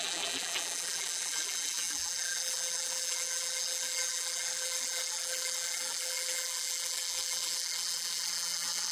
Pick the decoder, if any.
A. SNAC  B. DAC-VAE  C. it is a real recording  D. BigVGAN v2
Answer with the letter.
D